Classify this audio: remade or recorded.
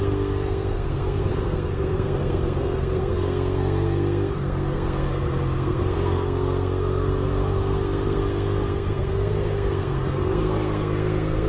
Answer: remade